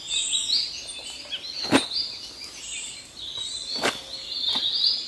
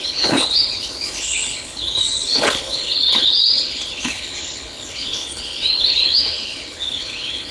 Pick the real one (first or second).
first